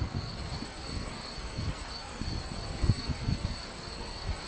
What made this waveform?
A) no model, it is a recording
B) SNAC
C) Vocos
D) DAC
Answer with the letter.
B